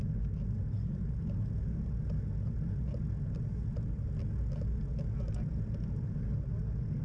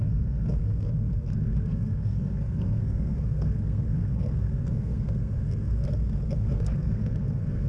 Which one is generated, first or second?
second